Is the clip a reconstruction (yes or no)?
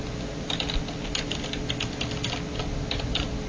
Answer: no